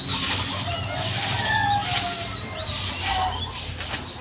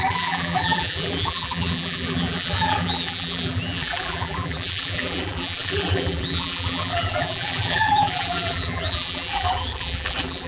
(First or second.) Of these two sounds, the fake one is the second